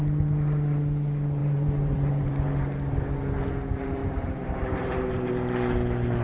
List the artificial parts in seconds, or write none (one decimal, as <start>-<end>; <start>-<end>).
1.4-2.6; 4.0-5.3